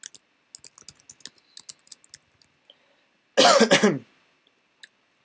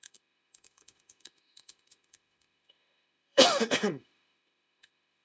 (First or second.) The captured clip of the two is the first